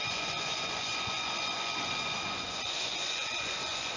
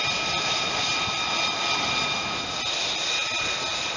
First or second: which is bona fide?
second